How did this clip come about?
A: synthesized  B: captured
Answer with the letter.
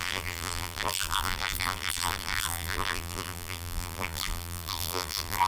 A